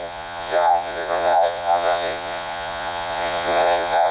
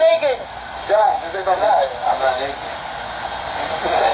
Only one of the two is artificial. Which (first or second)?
first